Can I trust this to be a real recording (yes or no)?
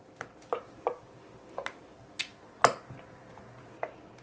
yes